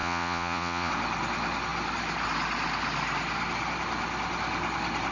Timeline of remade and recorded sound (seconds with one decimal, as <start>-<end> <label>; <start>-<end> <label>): 0.0-0.9 remade; 0.9-5.1 recorded